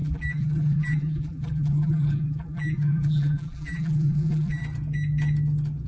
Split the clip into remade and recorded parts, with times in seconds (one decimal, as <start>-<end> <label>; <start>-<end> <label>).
0.0-4.6 remade; 4.6-5.9 recorded